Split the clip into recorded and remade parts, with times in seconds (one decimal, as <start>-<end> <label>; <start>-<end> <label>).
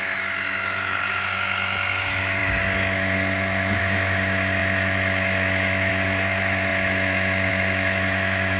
0.0-8.6 remade